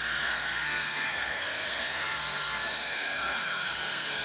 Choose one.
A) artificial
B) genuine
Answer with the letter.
A